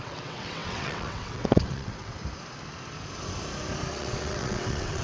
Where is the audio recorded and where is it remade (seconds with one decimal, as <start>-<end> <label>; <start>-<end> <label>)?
0.0-2.2 remade; 2.2-3.9 recorded; 3.9-5.0 remade